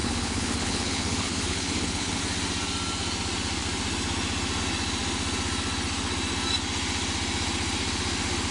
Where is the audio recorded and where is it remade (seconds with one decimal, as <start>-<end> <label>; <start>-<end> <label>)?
0.0-2.2 remade; 2.2-8.5 recorded